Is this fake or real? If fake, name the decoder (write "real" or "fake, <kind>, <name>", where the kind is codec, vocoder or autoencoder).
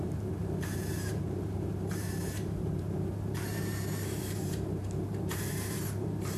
fake, vocoder, BigVGAN v2